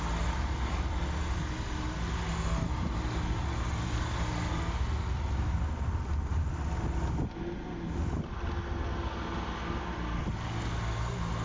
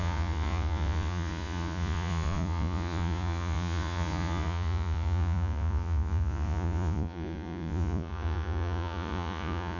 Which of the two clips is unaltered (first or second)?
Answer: first